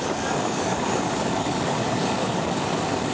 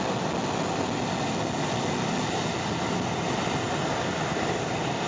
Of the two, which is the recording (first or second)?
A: second